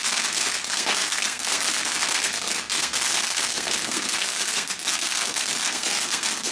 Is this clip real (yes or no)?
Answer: no